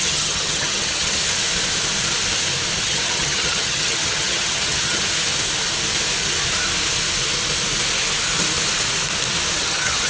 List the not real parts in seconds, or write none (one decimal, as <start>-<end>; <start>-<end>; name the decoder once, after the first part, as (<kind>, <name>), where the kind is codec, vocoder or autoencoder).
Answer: 0.0-1.2 (vocoder, HiFi-GAN); 2.8-5.0; 9.6-10.1